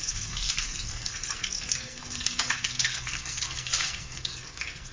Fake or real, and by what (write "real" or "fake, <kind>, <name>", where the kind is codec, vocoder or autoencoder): fake, codec, SNAC